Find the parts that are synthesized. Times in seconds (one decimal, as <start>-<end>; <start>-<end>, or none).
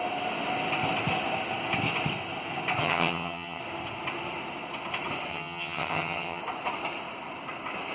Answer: 2.8-3.6; 5.3-6.4